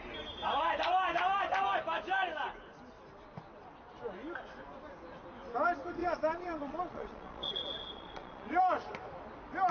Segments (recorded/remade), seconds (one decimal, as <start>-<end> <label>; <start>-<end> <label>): 0.0-6.0 recorded; 6.0-8.6 remade; 8.6-9.7 recorded